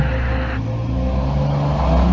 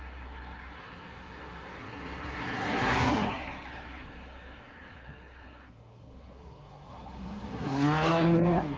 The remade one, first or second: second